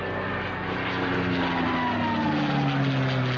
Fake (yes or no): no